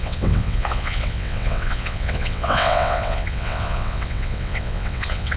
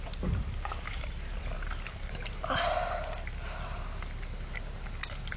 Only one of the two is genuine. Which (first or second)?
second